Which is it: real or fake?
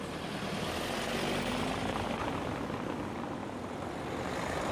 real